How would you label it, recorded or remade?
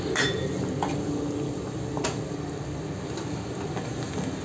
recorded